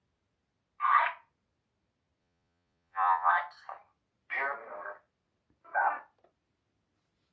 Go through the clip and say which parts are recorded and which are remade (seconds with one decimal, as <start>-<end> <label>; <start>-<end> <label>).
0.0-2.2 recorded; 2.2-3.3 remade; 3.3-7.3 recorded